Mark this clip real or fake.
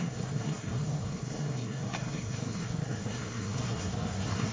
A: fake